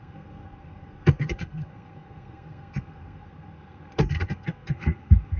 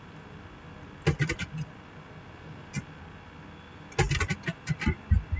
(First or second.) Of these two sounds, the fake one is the first